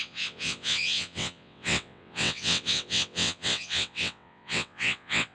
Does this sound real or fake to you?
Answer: fake